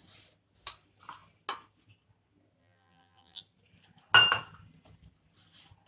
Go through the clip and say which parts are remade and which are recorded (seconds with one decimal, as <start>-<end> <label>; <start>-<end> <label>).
0.0-2.6 recorded; 2.6-3.4 remade; 3.4-5.9 recorded